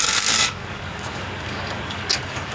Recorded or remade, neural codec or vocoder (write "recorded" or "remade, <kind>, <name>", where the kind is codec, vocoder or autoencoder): remade, codec, DAC